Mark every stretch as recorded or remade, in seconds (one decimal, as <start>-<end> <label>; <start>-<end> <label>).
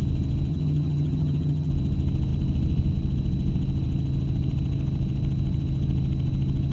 0.0-0.5 recorded; 0.5-1.7 remade; 1.7-6.7 recorded